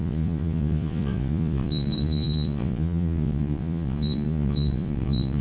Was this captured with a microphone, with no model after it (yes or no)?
no